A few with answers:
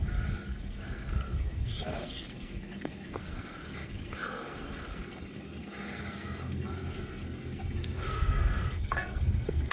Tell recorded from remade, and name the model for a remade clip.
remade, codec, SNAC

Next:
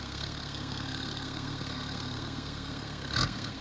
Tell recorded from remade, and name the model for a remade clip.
remade, codec, SNAC